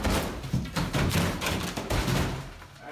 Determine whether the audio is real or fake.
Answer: real